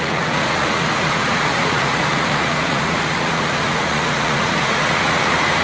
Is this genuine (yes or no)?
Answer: no